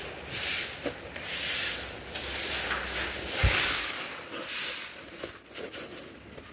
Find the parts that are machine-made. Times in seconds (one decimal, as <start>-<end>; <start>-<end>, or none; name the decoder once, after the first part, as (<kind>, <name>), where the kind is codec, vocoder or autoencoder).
3.4-4.1 (codec, DAC)